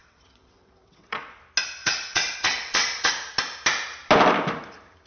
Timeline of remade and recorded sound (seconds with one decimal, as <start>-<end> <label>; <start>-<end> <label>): 0.0-1.4 remade; 1.4-1.8 recorded; 1.8-3.1 remade; 3.1-5.1 recorded